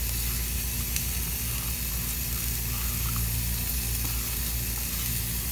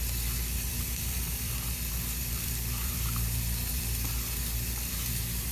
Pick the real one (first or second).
first